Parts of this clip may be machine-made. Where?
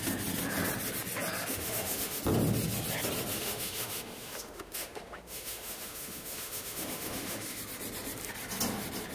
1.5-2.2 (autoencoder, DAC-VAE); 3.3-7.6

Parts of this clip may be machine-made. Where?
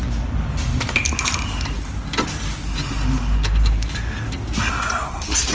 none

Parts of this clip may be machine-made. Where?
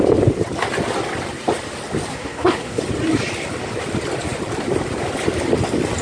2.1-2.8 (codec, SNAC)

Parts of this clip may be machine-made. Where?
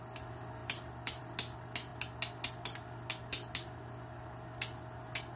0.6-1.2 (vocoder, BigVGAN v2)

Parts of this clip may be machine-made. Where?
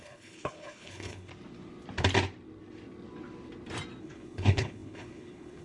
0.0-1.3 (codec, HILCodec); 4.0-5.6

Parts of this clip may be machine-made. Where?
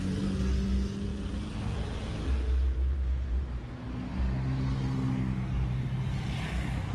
none